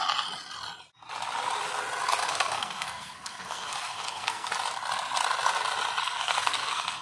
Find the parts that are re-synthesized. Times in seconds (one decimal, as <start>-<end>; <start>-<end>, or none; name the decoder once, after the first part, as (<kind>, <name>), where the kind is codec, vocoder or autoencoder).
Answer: 2.2-4.5 (codec, SNAC); 6.0-7.0